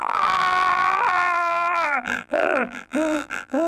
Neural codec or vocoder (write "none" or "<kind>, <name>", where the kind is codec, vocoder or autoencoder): vocoder, BigVGAN v2